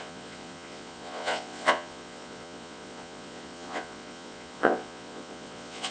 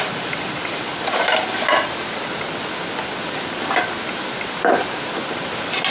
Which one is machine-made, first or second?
first